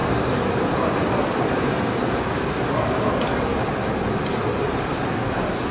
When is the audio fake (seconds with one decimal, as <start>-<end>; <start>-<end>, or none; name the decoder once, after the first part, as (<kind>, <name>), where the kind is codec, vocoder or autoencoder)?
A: none